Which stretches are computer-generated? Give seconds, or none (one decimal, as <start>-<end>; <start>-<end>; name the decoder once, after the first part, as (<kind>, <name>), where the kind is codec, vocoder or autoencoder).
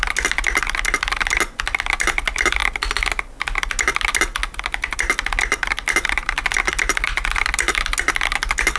none